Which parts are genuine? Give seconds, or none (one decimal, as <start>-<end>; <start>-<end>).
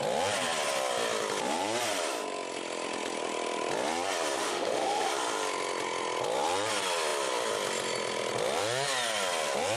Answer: 0.0-4.4; 5.1-9.8